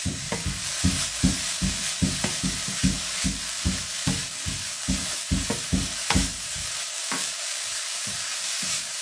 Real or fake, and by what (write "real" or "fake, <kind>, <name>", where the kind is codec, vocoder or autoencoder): fake, codec, DAC